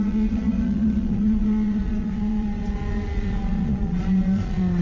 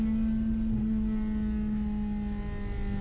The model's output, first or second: first